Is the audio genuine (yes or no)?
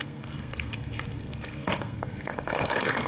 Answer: no